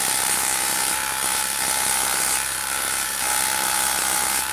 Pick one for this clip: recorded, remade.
remade